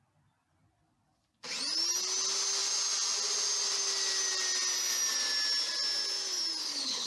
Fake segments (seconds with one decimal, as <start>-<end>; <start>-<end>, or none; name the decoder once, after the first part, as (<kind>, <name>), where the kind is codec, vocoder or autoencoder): 6.6-7.1 (codec, HILCodec)